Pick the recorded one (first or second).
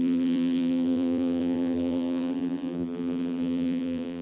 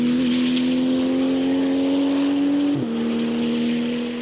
second